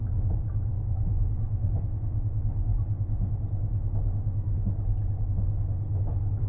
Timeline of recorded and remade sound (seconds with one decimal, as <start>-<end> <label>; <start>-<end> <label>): 0.0-0.7 recorded; 0.7-2.2 remade; 2.2-6.5 recorded